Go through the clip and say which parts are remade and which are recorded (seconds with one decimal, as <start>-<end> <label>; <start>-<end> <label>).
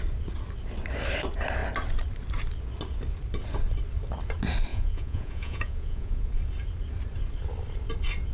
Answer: 0.0-4.7 recorded; 4.7-6.3 remade; 6.3-8.3 recorded